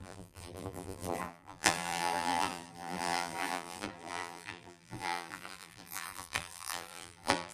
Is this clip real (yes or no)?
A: no